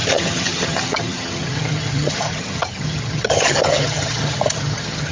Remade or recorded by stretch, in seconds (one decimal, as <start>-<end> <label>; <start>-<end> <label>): 0.0-5.1 remade